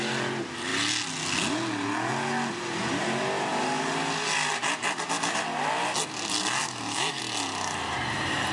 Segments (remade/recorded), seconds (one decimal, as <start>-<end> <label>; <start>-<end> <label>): 0.0-6.6 recorded; 6.6-7.2 remade; 7.2-8.5 recorded